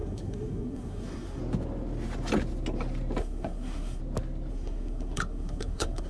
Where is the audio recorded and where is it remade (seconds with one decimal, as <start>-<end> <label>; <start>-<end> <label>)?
0.0-1.4 remade; 1.4-3.2 recorded; 3.2-4.0 remade; 4.0-4.5 recorded; 4.5-6.1 remade

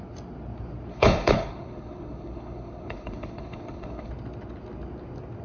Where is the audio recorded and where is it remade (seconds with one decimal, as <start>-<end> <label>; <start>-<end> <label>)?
0.0-0.9 recorded; 0.9-4.1 remade; 4.1-5.4 recorded

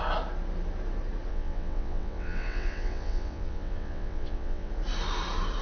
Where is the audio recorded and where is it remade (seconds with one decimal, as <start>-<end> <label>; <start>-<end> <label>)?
0.0-1.3 recorded; 1.3-4.7 remade; 4.7-5.6 recorded

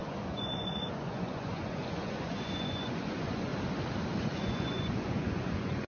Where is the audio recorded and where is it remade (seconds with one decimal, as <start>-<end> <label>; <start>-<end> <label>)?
0.0-3.5 remade; 3.5-4.2 recorded; 4.2-5.9 remade